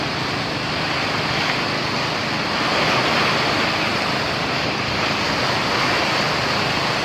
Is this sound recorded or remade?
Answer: recorded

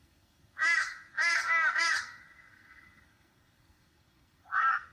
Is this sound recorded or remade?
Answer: remade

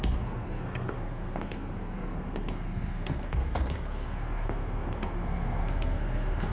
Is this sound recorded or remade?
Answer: remade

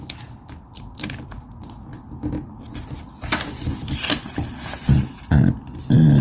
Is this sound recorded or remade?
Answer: recorded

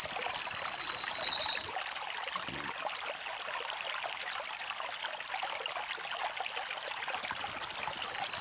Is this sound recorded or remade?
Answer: recorded